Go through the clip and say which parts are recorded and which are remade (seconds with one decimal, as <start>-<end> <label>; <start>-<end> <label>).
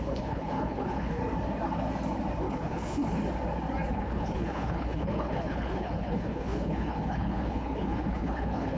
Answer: 0.0-1.2 remade; 1.2-2.5 recorded; 2.5-3.2 remade; 3.2-3.9 recorded; 3.9-8.8 remade